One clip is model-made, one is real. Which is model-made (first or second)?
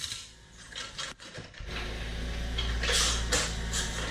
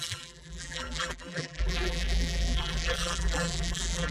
second